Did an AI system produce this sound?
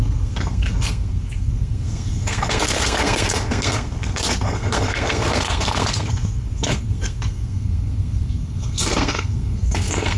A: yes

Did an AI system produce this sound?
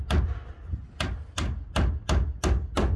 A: no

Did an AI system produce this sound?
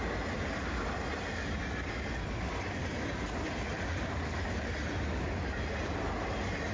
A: no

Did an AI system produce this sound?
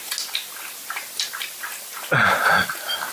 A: no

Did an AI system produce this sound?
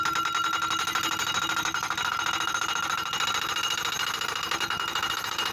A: no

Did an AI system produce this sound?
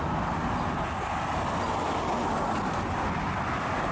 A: no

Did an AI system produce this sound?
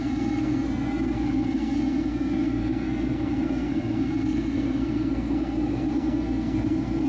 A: yes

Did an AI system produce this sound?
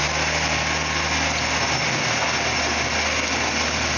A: no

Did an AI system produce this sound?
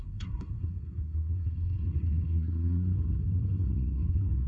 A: yes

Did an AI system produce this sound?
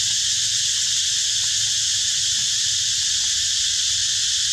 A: no